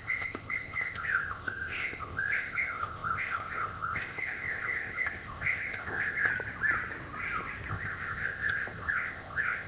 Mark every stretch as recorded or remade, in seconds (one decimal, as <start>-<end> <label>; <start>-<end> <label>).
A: 0.0-6.3 remade; 6.3-7.7 recorded; 7.7-9.7 remade